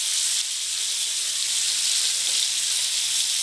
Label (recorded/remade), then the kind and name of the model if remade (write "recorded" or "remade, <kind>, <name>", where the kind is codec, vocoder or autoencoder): recorded